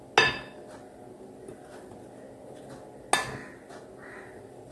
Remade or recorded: recorded